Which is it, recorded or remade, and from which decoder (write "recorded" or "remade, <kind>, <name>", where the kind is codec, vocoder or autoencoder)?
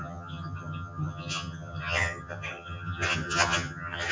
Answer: remade, vocoder, HiFi-GAN